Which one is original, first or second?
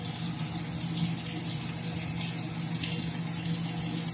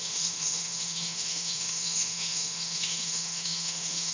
first